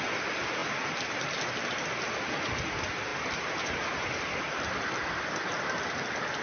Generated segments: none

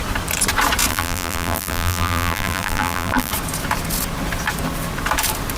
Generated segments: 0.9-3.3 (vocoder, BigVGAN v2)

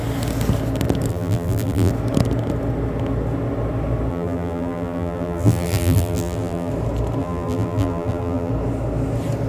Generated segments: 1.1-1.9 (vocoder, BigVGAN v2); 4.1-6.7; 7.2-8.5

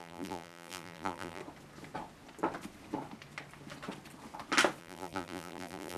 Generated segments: 0.0-1.4 (vocoder, BigVGAN v2); 4.8-6.0

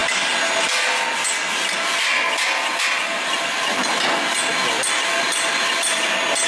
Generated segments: none

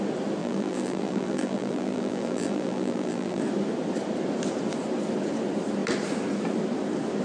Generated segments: 0.4-3.4 (vocoder, BigVGAN v2)

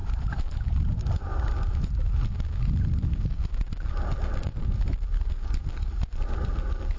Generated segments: 0.0-0.9 (vocoder, BigVGAN v2)

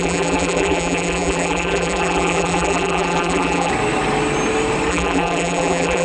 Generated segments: 0.0-3.7 (vocoder, BigVGAN v2); 4.9-6.0